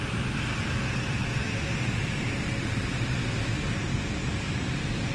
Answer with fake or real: real